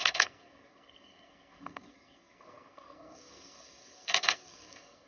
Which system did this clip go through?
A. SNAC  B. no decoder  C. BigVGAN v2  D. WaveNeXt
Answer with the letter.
A